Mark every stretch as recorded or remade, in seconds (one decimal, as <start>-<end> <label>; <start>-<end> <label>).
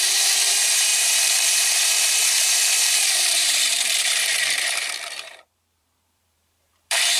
0.0-7.2 remade